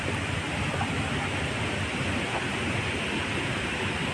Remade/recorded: recorded